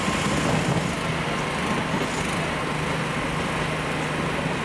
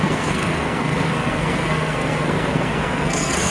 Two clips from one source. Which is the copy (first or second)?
second